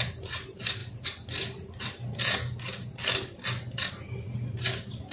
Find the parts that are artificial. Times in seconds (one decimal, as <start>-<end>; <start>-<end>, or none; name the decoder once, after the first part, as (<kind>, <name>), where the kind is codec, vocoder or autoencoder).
none